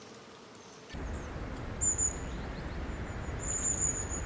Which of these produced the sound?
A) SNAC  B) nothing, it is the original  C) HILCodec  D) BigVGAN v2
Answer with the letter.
B